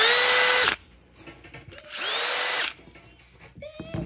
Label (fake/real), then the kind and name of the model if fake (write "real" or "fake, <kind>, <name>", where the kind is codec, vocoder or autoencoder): real